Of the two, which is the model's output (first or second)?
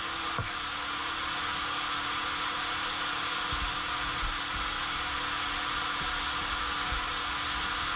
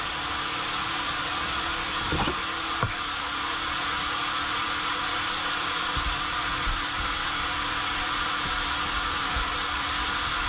second